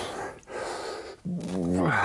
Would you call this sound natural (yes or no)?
yes